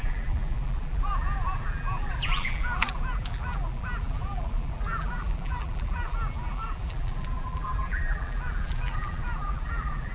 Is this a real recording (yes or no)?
no